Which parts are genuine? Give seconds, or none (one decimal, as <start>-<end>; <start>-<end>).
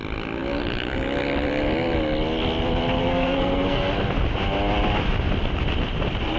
0.0-3.0; 3.9-6.4